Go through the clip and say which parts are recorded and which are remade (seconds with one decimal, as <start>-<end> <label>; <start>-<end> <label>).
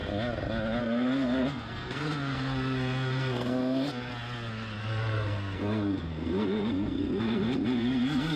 0.0-0.8 recorded; 0.8-4.1 remade; 4.1-4.8 recorded; 4.8-8.4 remade